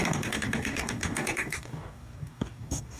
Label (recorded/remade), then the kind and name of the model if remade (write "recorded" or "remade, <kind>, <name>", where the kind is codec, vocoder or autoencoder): remade, codec, DAC